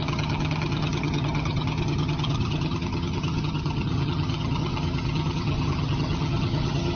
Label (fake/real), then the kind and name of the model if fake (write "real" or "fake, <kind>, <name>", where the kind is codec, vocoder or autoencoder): fake, vocoder, HiFi-GAN